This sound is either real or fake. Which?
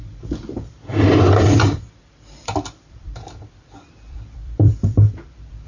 fake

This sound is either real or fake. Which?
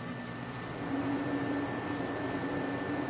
real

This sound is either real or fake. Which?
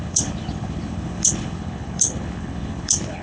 fake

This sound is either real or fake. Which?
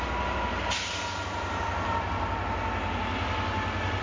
real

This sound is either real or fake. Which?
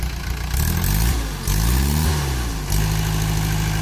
real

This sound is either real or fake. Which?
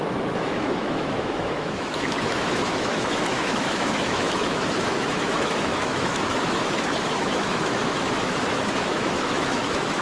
fake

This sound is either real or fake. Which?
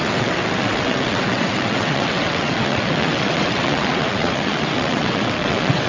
fake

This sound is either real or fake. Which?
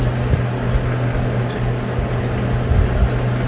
real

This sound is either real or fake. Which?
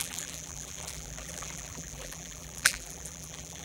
fake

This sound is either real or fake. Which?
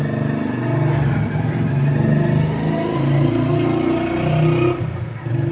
real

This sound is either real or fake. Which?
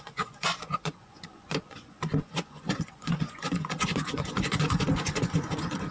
fake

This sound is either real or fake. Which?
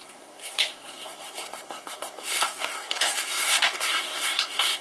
fake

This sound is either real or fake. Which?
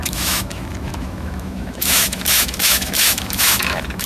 fake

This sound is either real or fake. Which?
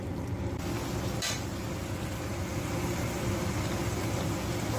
real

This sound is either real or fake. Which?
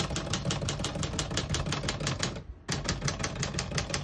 real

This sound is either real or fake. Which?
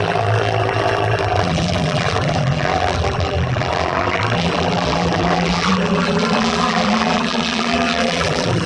fake